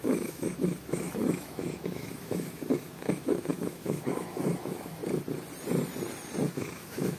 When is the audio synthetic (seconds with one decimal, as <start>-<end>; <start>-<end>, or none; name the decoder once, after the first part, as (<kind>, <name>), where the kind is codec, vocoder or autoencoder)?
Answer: 0.0-5.0 (autoencoder, DAC-VAE); 6.5-7.2